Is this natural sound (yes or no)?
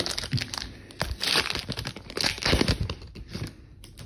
yes